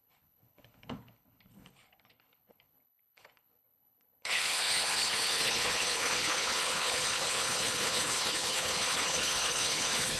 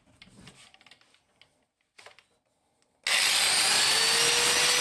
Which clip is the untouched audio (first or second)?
second